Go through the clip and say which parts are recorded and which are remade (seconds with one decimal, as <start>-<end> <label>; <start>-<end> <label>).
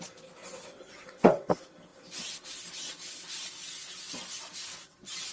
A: 0.0-0.4 recorded; 0.4-1.5 remade; 1.5-3.6 recorded; 3.6-4.1 remade; 4.1-4.7 recorded; 4.7-5.3 remade